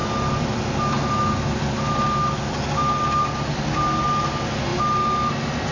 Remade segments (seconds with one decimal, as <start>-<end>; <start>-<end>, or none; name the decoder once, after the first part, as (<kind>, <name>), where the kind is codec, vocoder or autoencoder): none